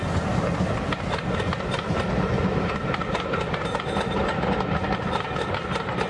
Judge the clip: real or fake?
real